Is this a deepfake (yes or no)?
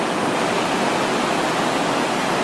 no